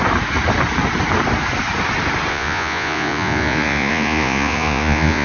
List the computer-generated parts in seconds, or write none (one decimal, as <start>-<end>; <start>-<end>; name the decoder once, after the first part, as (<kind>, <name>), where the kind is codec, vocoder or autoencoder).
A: 2.3-5.2 (vocoder, Vocos)